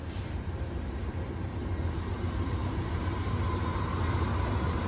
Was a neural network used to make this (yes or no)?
yes